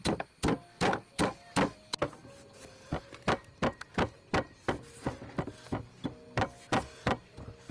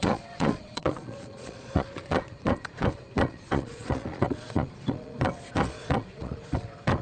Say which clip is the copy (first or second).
second